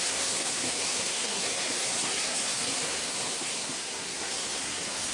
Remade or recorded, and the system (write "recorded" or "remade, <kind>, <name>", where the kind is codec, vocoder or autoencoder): remade, codec, SNAC